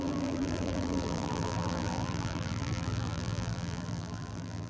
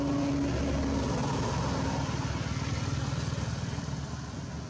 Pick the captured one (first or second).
second